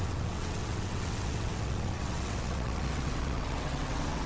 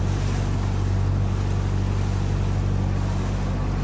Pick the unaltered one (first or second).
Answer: second